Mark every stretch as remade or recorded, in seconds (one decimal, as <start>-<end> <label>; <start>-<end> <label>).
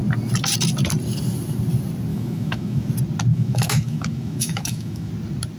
0.0-2.1 recorded; 2.1-2.9 remade; 2.9-3.3 recorded; 3.3-5.1 remade; 5.1-5.6 recorded